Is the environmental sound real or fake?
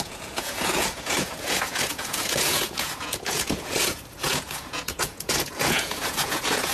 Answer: fake